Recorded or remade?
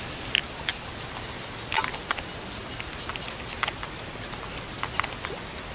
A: recorded